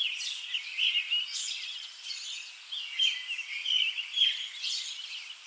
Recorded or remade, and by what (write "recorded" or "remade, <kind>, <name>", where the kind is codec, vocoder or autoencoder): recorded